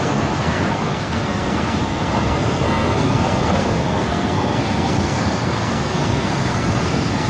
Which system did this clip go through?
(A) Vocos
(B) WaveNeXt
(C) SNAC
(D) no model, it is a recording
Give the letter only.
C